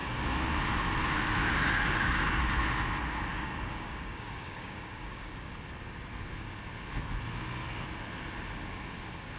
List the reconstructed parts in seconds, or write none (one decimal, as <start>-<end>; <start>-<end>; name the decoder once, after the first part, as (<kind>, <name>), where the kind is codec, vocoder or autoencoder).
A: 1.4-2.4 (codec, DAC); 3.3-5.5